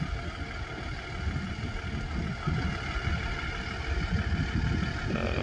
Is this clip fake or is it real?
real